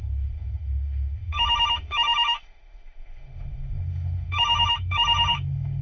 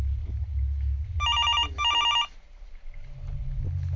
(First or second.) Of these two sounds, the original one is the second